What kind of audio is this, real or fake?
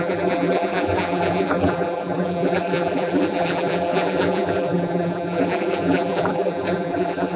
fake